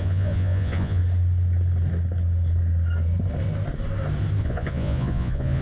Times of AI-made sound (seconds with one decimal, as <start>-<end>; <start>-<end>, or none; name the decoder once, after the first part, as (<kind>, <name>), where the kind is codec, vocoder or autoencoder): 0.0-1.0 (vocoder, Vocos); 4.4-5.6